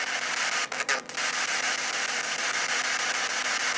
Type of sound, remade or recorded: recorded